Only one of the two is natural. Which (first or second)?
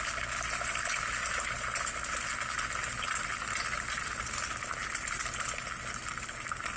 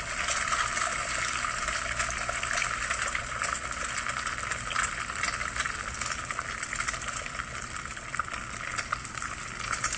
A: first